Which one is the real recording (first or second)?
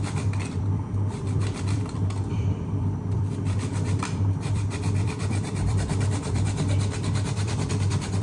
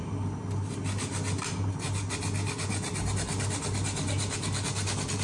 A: second